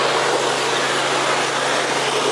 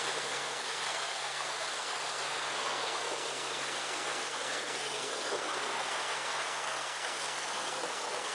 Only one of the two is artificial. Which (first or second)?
second